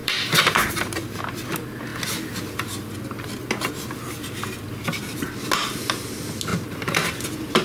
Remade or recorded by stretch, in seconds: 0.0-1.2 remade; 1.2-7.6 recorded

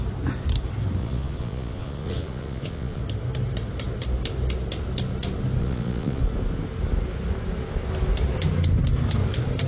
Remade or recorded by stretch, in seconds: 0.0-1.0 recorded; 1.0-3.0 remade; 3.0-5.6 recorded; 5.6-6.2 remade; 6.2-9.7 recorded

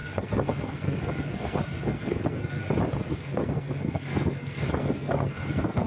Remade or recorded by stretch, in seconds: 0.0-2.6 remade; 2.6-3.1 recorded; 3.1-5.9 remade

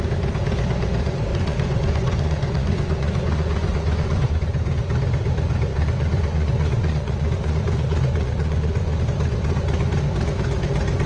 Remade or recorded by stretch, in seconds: 0.0-1.3 recorded; 1.3-4.3 remade; 4.3-5.7 recorded; 5.7-9.0 remade; 9.0-11.1 recorded

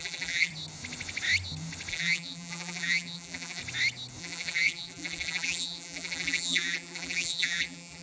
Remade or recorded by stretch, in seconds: 0.0-0.5 remade; 0.5-1.9 recorded; 1.9-3.6 remade; 3.6-4.2 recorded; 4.2-8.0 remade

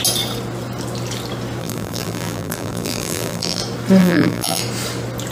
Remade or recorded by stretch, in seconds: 0.0-1.6 recorded; 1.6-3.6 remade; 3.6-4.0 recorded; 4.0-4.6 remade; 4.6-5.3 recorded